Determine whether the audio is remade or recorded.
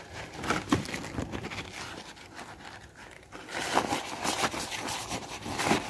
recorded